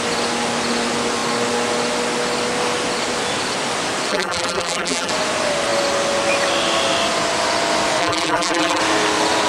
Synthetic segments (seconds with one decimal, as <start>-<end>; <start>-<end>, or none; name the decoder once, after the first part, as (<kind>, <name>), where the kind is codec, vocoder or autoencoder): 4.1-5.1 (vocoder, BigVGAN v2); 8.0-8.8